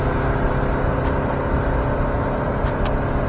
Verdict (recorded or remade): recorded